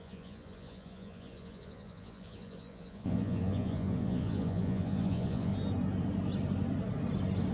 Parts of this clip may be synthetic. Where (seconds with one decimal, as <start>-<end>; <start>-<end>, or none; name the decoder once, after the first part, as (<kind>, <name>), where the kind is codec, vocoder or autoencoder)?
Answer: 0.0-5.5 (vocoder, Vocos)